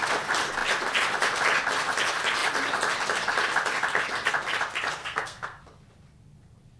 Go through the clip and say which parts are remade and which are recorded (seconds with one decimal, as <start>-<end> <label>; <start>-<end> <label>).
0.0-5.0 recorded; 5.0-5.6 remade; 5.6-6.8 recorded